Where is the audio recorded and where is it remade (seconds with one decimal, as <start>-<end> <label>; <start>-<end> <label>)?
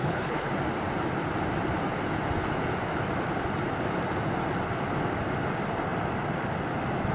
0.0-0.6 remade; 0.6-7.1 recorded